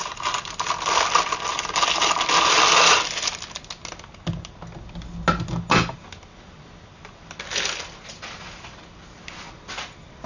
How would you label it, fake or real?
real